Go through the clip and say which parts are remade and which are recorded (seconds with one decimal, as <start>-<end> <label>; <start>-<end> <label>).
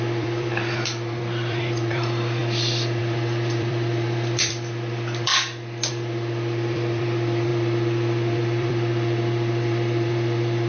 0.0-2.4 remade; 2.4-3.0 recorded; 3.0-5.3 remade; 5.3-5.9 recorded; 5.9-10.7 remade